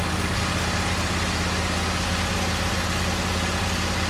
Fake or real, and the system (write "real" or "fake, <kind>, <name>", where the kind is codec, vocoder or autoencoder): real